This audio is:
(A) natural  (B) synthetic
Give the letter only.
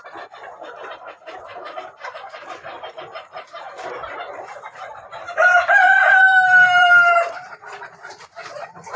B